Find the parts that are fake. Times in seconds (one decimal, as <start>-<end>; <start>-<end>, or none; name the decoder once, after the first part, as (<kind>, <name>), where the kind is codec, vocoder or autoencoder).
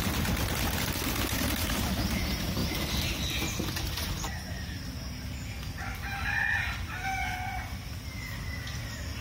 none